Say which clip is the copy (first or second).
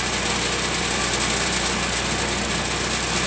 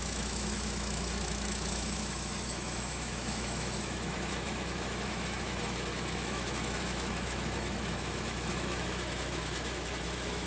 second